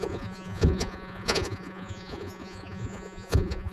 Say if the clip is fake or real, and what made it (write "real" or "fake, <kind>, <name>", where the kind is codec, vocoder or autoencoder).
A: fake, vocoder, Vocos